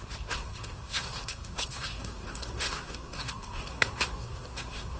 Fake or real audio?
fake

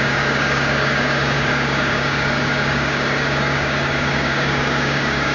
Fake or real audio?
fake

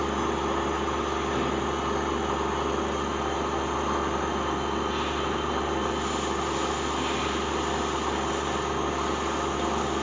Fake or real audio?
real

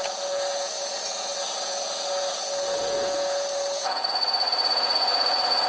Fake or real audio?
fake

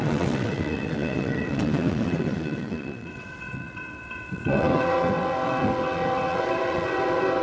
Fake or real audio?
fake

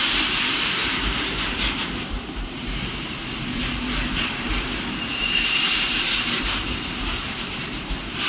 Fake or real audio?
fake